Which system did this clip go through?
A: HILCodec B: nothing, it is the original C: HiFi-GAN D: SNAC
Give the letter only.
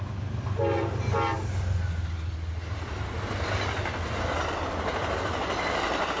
B